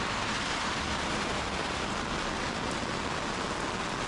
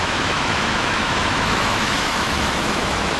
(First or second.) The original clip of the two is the first